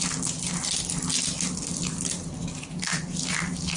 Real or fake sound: real